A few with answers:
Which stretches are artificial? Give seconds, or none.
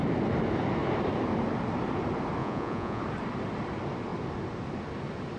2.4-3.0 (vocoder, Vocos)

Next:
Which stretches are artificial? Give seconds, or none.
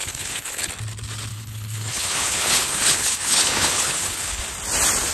0.0-0.7 (codec, HILCodec); 1.3-4.4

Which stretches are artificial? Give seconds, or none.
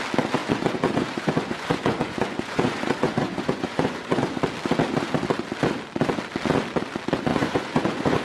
0.4-4.4 (vocoder, Vocos); 7.3-8.2